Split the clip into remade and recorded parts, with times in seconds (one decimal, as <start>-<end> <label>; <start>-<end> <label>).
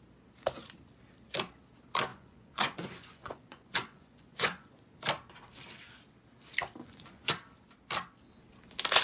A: 0.0-2.1 recorded; 2.1-5.0 remade; 5.0-6.8 recorded; 6.8-7.3 remade; 7.3-9.0 recorded